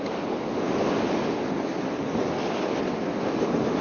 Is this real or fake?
real